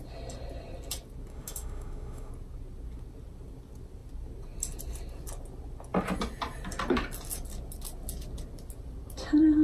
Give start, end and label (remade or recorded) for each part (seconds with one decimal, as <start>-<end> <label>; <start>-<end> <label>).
0.0-1.3 recorded; 1.3-2.3 remade; 2.3-9.6 recorded